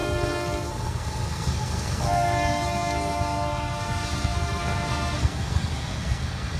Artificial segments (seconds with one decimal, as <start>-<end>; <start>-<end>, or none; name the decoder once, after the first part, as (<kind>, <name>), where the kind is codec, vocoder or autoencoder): 0.0-6.6 (codec, SNAC)